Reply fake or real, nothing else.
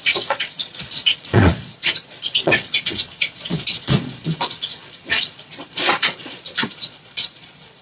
fake